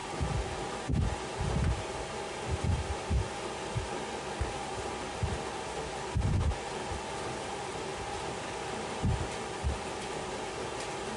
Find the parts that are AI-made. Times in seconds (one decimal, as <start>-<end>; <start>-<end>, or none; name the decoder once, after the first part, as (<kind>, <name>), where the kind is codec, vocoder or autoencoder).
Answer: none